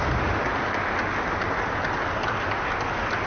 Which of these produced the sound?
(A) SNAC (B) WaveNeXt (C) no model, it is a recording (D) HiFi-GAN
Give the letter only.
C